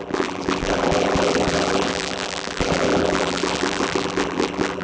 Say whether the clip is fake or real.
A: fake